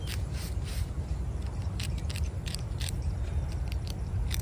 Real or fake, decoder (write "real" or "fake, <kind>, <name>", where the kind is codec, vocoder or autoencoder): fake, vocoder, BigVGAN v2